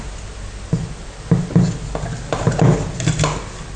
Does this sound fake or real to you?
fake